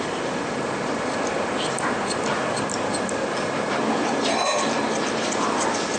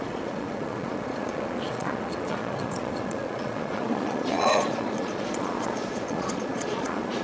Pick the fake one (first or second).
second